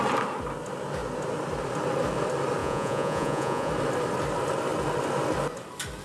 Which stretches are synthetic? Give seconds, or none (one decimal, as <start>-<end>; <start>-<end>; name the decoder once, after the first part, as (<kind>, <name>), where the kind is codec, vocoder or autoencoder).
2.6-3.7 (vocoder, Vocos)

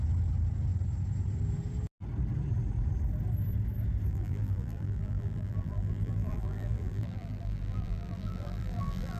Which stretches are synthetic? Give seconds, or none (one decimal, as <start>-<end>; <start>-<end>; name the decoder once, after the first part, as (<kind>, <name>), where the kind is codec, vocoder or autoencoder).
4.1-9.2 (vocoder, BigVGAN v2)

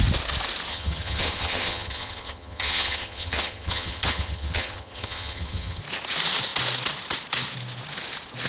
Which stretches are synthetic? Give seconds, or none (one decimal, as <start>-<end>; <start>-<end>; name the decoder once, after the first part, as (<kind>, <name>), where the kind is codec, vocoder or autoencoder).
0.7-5.8 (vocoder, HiFi-GAN)

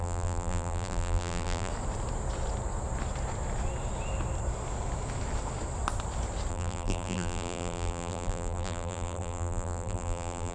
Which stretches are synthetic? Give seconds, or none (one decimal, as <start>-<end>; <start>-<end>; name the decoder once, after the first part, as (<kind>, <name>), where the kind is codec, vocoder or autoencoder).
0.0-1.7 (vocoder, BigVGAN v2); 6.5-10.5

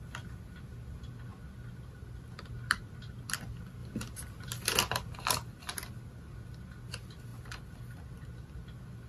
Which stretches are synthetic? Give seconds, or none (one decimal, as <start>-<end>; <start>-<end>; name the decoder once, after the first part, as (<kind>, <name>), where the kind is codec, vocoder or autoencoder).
none

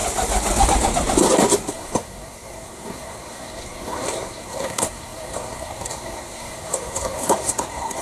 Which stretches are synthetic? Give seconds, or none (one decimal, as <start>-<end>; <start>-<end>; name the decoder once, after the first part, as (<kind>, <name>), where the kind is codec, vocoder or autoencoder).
1.7-8.0 (codec, SNAC)

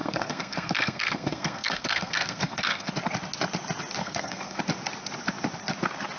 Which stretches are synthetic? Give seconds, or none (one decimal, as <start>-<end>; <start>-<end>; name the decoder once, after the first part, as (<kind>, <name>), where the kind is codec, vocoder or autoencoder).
0.0-2.9 (codec, SNAC); 4.0-4.6